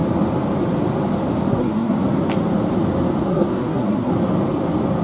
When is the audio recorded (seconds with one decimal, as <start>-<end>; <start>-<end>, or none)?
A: 0.0-1.5; 2.0-3.3; 4.1-5.0